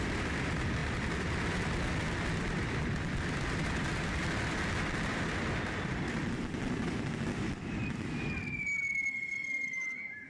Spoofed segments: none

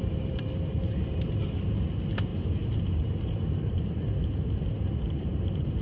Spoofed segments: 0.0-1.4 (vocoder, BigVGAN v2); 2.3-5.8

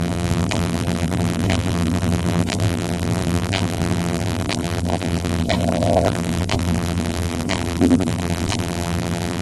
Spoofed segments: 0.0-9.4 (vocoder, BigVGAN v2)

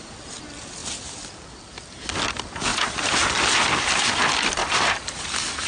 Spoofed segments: 2.7-3.4 (vocoder, BigVGAN v2); 4.6-5.7

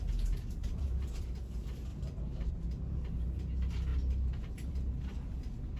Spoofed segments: 0.6-1.2 (vocoder, BigVGAN v2); 1.9-2.5

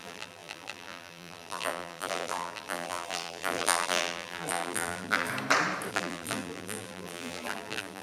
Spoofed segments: 0.0-5.3 (vocoder, BigVGAN v2); 5.9-8.0

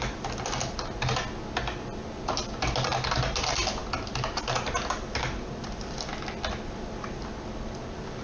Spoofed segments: none